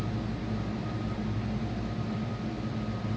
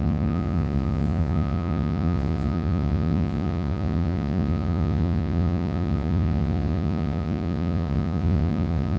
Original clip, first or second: first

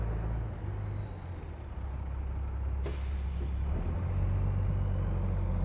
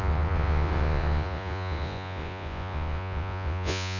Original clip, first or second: first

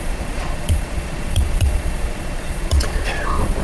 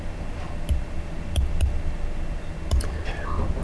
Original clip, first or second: second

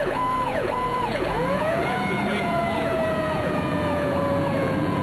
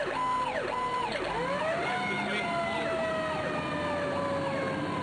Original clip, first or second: second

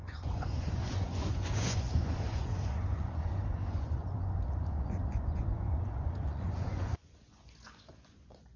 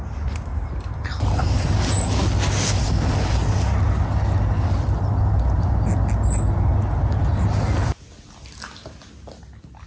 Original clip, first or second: second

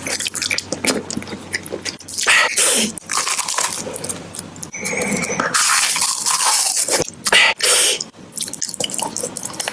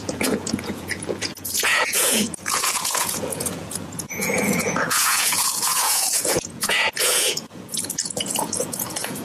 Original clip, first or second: first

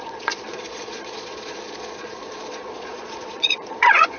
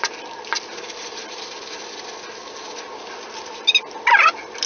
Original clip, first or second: second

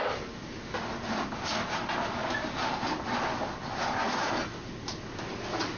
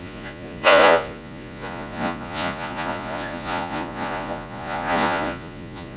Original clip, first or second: first